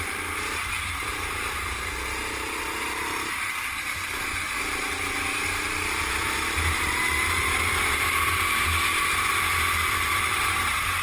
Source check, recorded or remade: remade